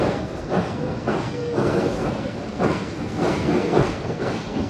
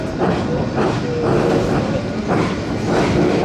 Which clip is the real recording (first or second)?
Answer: second